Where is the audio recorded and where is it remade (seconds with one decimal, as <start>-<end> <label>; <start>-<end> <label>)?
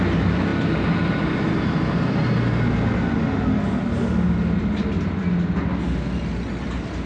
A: 0.0-7.1 recorded